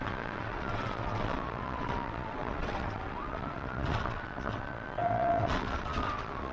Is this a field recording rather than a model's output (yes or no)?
no